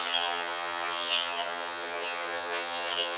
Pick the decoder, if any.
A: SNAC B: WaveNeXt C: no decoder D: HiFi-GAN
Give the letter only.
D